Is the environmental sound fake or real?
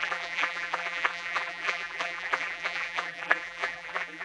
fake